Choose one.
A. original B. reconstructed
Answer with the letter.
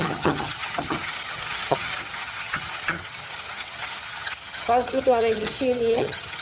B